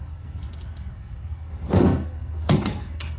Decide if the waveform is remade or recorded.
remade